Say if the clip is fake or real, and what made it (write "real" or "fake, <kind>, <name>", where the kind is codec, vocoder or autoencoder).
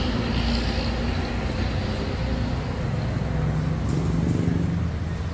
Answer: real